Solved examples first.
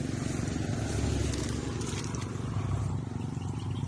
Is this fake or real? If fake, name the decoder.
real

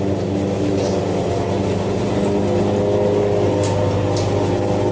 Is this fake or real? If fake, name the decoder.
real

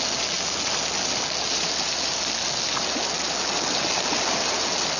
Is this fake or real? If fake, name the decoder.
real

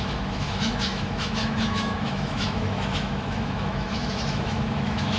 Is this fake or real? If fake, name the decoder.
fake, autoencoder, DAC-VAE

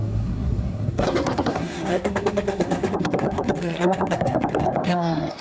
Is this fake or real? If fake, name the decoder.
fake, codec, SNAC